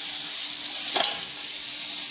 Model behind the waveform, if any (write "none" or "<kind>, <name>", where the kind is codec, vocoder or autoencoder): none